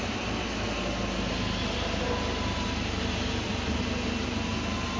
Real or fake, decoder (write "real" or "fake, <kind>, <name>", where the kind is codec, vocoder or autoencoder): real